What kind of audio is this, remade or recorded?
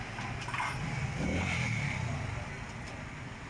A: recorded